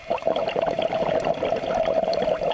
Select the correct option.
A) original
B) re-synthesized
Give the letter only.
B